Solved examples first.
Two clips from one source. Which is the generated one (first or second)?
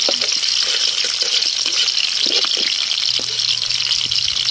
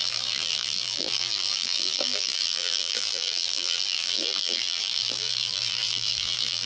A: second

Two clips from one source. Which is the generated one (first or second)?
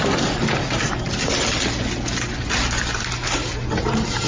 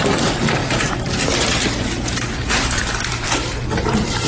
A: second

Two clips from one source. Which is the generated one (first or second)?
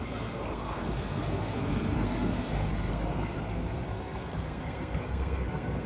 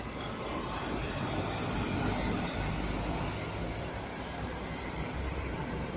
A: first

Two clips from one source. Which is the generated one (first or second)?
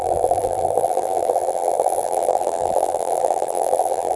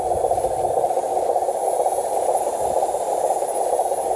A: first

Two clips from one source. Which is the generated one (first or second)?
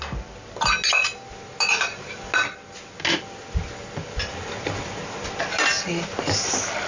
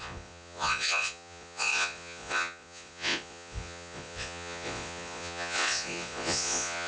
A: second